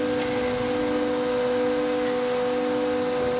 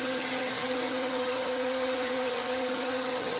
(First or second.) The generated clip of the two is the second